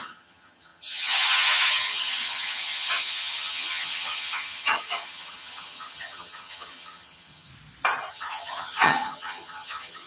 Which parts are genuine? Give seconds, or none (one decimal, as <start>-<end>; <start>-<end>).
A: 7.5-8.1

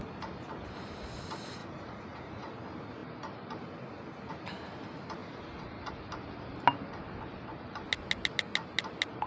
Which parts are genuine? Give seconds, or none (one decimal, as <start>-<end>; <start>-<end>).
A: 0.0-1.6; 2.5-5.2; 5.9-9.3